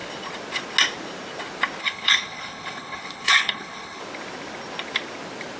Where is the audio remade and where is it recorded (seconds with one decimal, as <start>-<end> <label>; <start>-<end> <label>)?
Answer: 0.0-1.8 recorded; 1.8-4.0 remade; 4.0-5.6 recorded